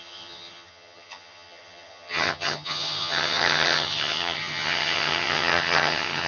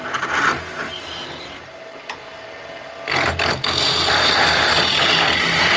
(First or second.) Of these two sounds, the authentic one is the second